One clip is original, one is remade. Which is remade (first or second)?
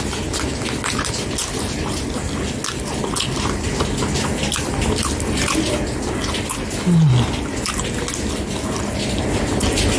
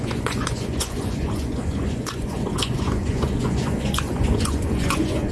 second